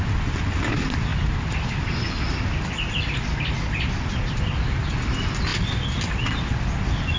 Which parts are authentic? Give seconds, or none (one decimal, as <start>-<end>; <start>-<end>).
0.0-7.2